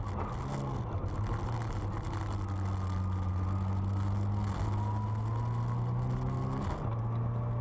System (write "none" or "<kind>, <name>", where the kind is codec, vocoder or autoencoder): none